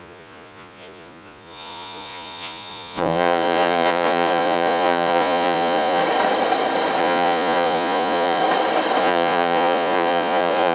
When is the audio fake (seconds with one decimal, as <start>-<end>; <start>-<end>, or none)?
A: 0.0-6.0; 7.0-8.4; 9.0-10.7